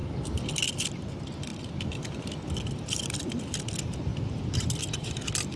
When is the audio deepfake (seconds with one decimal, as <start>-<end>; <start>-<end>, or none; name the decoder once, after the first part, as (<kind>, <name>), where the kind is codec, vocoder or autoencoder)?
none